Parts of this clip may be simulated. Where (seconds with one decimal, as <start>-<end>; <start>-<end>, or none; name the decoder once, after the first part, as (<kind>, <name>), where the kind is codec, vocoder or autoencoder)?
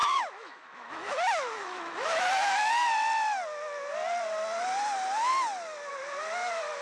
0.0-2.7 (autoencoder, DAC-VAE)